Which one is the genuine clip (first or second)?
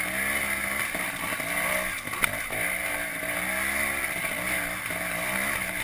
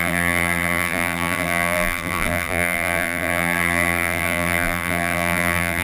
first